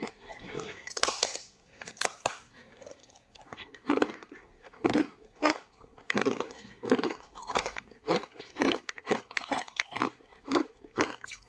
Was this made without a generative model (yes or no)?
no